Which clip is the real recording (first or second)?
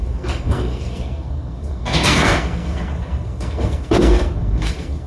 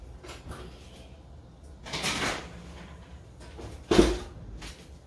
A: second